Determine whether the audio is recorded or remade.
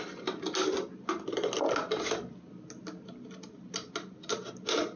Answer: recorded